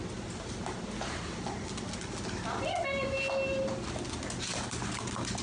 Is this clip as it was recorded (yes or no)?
yes